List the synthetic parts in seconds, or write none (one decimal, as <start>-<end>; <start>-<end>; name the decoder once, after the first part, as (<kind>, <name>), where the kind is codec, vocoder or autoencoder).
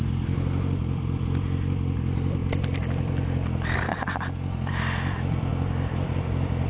none